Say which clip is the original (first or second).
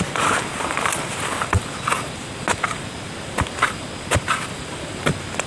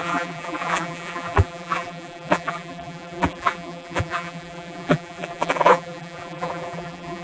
first